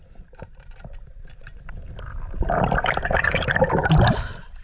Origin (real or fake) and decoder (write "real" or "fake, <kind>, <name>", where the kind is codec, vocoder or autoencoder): fake, vocoder, BigVGAN v2